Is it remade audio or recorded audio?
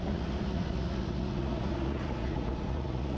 remade